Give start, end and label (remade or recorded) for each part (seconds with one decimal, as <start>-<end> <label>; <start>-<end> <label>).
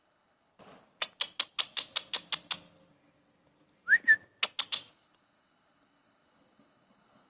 0.0-0.5 remade; 0.5-4.9 recorded; 4.9-7.3 remade